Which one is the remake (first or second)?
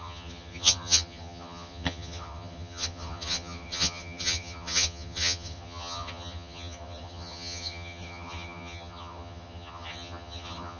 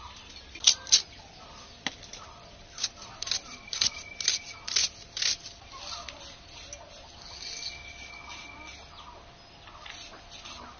first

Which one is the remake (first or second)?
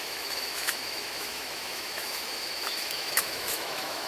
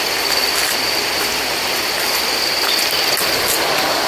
first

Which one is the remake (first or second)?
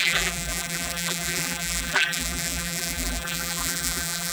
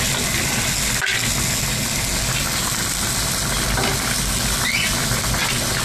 first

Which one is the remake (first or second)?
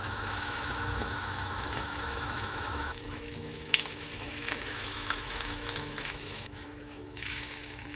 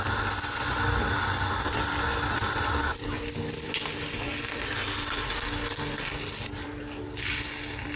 first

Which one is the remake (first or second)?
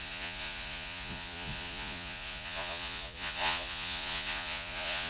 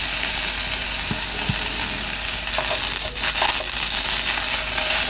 first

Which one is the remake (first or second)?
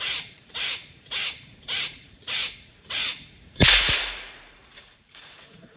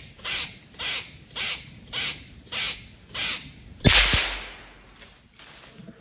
first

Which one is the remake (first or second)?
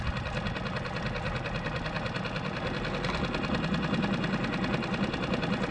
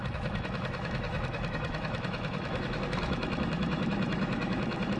second